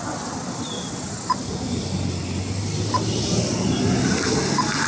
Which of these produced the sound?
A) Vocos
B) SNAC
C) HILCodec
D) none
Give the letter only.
D